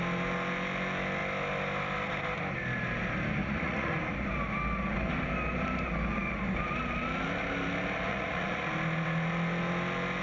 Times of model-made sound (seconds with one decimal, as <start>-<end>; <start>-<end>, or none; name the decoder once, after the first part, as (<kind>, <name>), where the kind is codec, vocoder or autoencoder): 3.4-4.0 (vocoder, Vocos); 8.1-8.7